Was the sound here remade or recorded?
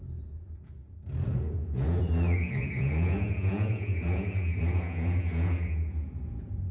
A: remade